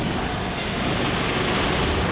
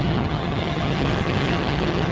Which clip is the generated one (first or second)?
second